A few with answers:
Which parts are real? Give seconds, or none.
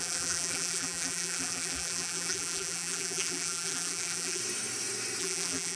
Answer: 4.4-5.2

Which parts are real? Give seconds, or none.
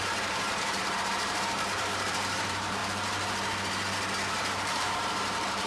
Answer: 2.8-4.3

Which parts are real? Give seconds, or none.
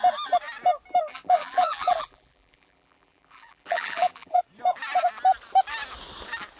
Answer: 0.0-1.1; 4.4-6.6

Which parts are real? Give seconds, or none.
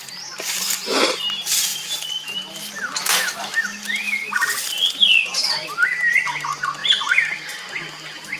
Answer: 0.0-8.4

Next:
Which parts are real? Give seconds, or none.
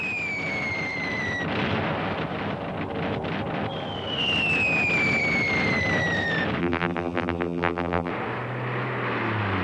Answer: 0.0-6.6; 8.1-9.6